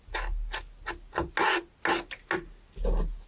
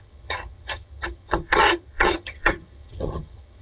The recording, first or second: first